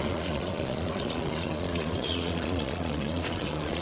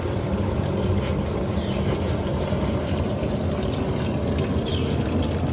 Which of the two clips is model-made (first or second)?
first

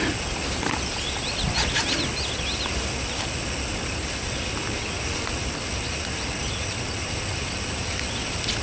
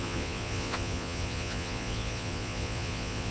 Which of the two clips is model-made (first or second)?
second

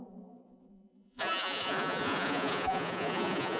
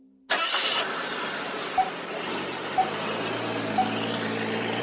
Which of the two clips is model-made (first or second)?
first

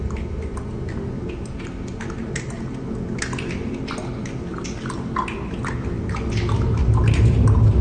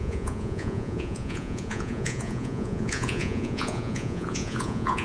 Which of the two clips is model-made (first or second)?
second